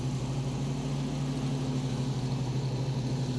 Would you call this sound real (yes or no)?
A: yes